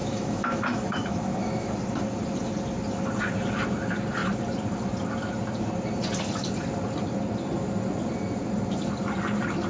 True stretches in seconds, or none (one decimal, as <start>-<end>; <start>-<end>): 1.7-9.7